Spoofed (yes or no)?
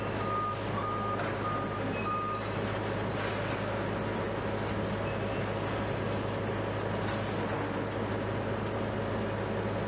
no